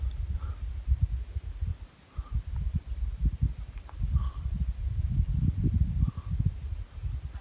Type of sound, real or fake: real